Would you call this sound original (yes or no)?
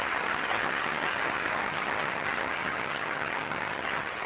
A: no